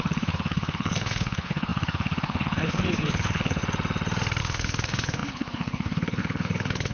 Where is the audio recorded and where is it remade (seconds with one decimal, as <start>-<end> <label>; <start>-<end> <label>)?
0.0-3.6 remade; 3.6-4.4 recorded; 4.4-6.9 remade